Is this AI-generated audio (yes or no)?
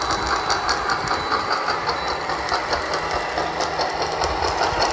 no